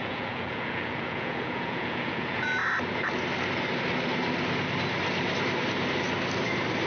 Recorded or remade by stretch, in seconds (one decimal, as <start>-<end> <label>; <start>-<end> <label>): 0.0-2.6 remade; 2.6-6.9 recorded